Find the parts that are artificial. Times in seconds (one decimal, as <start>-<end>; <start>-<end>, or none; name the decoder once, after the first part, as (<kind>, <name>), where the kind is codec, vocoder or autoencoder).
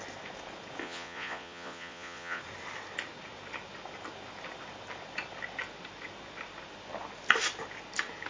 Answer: 0.8-2.4 (vocoder, Vocos)